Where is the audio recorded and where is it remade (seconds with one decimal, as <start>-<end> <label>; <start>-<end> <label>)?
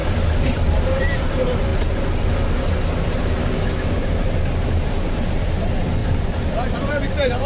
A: 0.0-3.4 recorded; 3.4-4.1 remade; 4.1-7.5 recorded